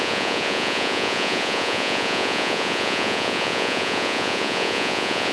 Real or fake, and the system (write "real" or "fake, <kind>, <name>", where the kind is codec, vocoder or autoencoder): fake, vocoder, Vocos